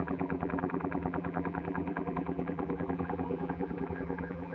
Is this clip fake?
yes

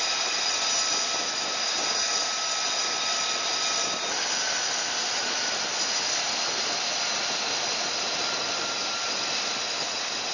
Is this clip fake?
no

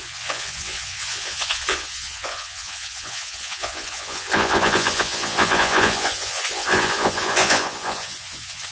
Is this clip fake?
yes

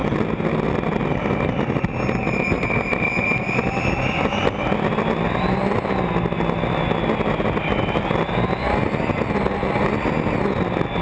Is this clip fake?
no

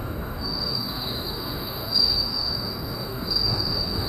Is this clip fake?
yes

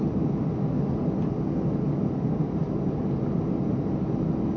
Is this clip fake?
no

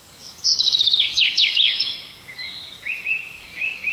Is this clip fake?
yes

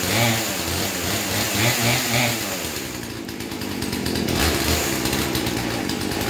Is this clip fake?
no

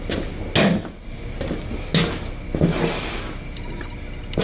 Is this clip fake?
no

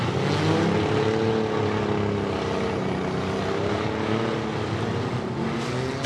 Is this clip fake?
no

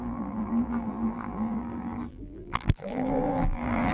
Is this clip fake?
yes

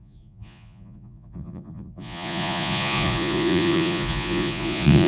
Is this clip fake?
yes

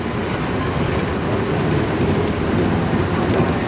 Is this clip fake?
no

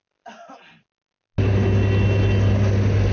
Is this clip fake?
no